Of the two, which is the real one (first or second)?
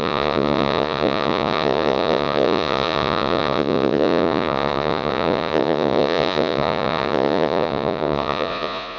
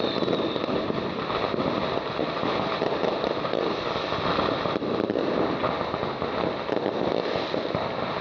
second